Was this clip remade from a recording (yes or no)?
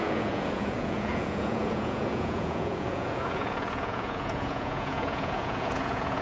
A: yes